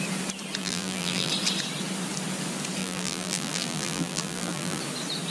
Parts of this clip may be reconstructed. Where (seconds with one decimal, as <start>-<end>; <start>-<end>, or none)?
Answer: 0.6-1.3; 2.8-4.8